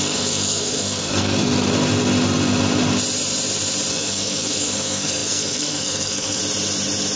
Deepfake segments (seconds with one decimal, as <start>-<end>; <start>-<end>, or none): 0.0-1.4; 3.9-6.4